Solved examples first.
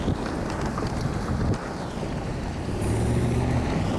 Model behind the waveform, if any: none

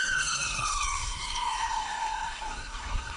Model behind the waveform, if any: codec, SNAC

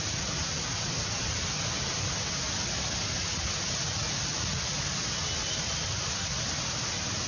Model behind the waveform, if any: none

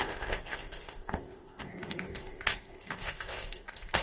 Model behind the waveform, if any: codec, ZipCodec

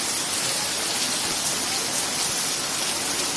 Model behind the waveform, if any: none